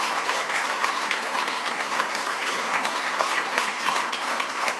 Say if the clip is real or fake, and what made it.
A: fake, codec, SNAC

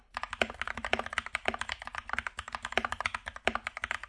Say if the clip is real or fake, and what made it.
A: real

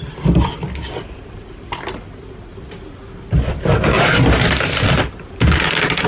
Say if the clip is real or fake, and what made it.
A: real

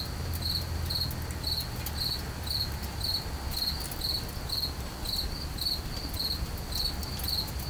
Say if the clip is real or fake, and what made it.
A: real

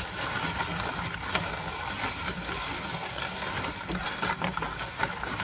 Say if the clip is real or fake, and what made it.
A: real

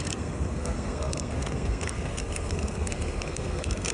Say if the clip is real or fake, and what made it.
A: fake, codec, SNAC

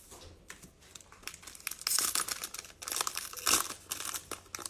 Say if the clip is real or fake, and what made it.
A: real